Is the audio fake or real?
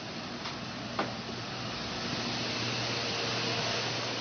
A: real